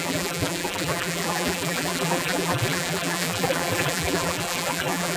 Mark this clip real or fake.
fake